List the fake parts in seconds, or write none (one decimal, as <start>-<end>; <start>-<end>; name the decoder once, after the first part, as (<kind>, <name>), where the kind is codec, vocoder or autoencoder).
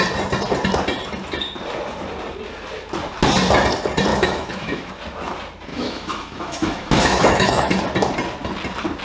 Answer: 4.1-4.9 (autoencoder, DAC-VAE); 5.7-7.8